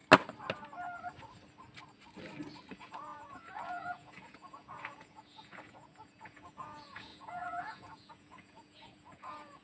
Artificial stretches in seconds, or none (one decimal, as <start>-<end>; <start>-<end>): 2.7-9.6